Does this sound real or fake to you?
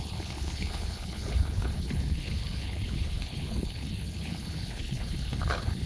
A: fake